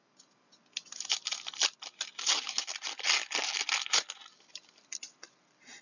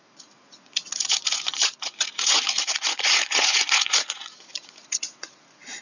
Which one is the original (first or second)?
first